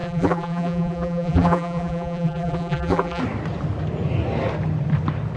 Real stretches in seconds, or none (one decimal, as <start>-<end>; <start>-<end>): 3.2-5.4